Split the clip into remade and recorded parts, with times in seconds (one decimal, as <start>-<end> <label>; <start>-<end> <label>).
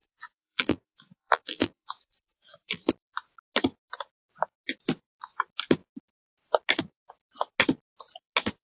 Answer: 0.0-2.9 remade; 2.9-8.6 recorded